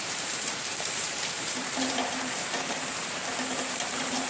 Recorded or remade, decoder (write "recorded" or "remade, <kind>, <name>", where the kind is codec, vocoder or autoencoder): remade, vocoder, BigVGAN v2